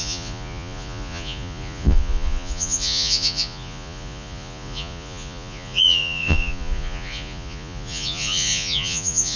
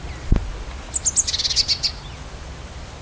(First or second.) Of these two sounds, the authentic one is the second